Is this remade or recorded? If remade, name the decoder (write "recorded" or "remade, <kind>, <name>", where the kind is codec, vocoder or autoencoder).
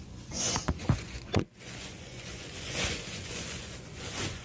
remade, vocoder, Vocos